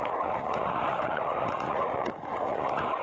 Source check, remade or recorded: remade